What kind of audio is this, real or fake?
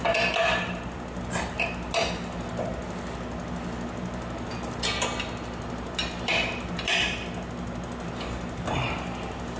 real